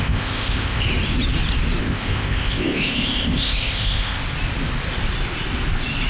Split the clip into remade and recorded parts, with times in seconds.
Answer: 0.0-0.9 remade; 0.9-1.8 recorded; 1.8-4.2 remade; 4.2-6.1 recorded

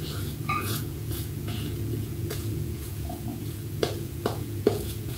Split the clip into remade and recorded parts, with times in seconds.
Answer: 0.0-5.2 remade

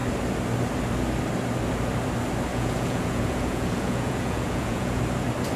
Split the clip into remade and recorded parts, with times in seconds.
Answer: 0.0-2.5 recorded; 2.5-5.0 remade; 5.0-5.6 recorded

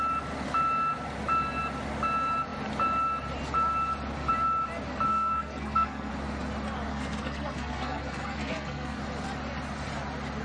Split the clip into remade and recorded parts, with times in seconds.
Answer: 0.0-5.1 recorded; 5.1-6.1 remade; 6.1-6.9 recorded; 6.9-9.0 remade; 9.0-10.4 recorded

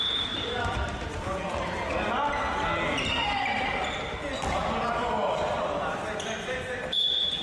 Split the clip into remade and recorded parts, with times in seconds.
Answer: 0.0-1.4 remade; 1.4-5.8 recorded; 5.8-7.4 remade